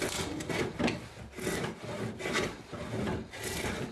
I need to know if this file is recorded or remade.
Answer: recorded